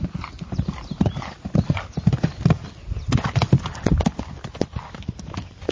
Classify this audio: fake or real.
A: real